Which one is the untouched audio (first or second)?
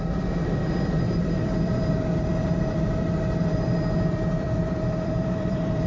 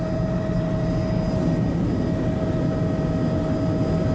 second